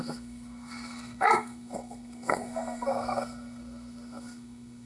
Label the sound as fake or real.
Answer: fake